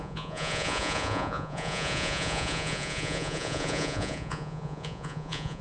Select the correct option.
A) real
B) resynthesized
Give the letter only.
B